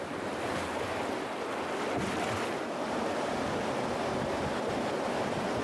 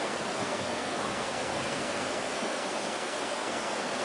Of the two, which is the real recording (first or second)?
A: first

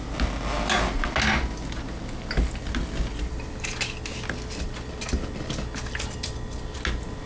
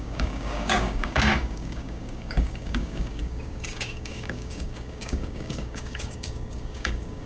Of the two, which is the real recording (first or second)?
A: first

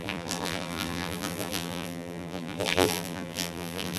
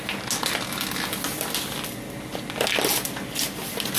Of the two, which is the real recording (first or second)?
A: second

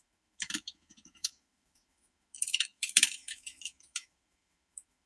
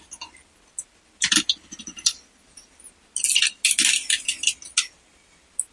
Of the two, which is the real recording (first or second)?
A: second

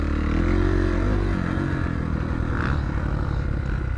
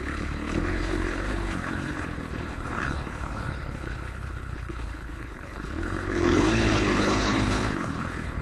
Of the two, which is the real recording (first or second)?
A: first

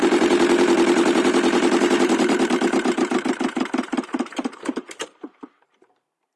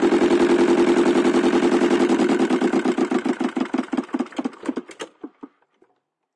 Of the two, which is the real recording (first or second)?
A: second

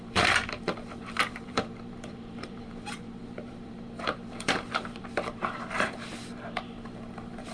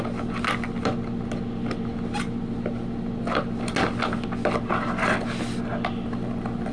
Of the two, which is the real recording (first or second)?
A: second